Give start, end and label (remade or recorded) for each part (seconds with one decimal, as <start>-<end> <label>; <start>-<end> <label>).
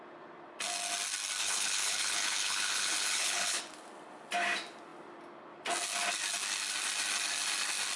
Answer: 0.0-1.4 recorded; 1.4-3.6 remade; 3.6-8.0 recorded